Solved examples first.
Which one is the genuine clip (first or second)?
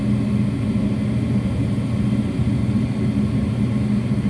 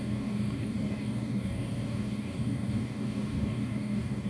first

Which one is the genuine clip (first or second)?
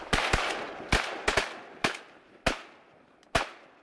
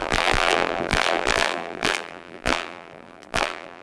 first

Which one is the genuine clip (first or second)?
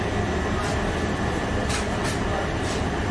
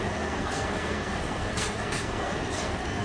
first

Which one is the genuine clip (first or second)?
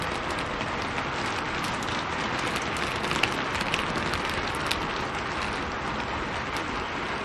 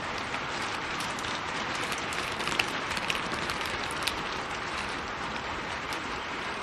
first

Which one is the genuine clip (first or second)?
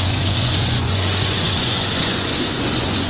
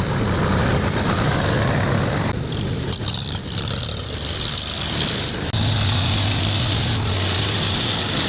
second